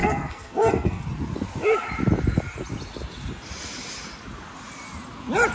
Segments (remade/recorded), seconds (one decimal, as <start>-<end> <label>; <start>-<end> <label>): 0.0-1.0 remade; 1.0-5.5 recorded